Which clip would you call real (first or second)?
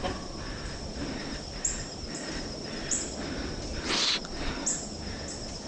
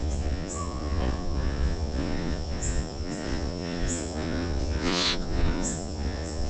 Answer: first